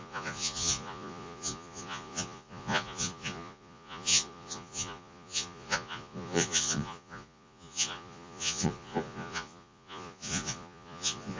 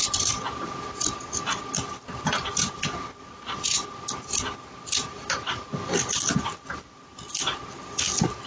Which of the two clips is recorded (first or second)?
second